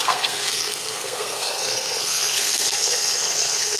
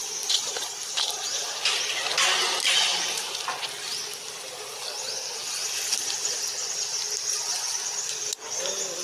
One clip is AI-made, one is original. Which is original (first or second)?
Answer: second